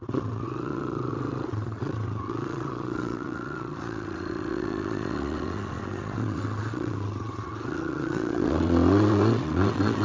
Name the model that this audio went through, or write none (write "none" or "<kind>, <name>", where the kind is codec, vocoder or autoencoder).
vocoder, WaveNeXt